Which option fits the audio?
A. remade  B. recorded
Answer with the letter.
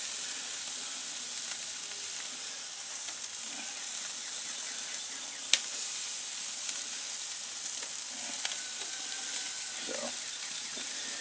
B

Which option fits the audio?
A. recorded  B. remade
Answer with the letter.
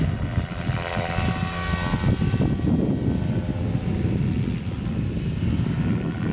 A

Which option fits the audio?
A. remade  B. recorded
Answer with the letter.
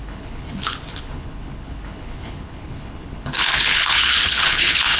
A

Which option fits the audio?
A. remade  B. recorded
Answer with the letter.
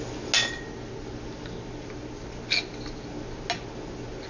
B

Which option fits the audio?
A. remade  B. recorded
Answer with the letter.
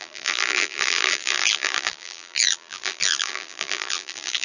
A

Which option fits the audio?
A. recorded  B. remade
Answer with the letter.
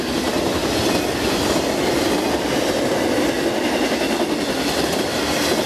A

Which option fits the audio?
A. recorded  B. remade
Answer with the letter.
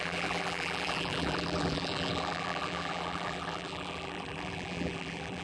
B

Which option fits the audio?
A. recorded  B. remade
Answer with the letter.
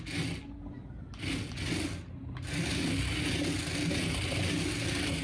A